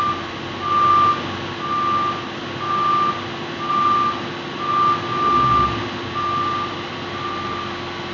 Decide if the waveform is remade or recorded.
recorded